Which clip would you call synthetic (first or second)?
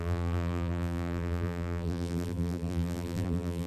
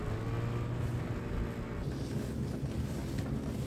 first